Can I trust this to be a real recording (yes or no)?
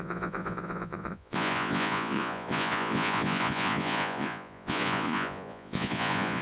no